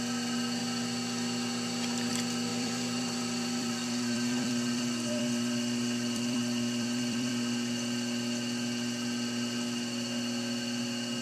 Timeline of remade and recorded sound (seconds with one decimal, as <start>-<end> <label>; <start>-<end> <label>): 0.0-2.5 recorded; 2.5-7.3 remade; 7.3-11.2 recorded